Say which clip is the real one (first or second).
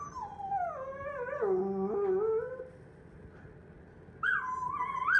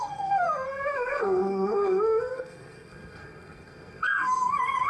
first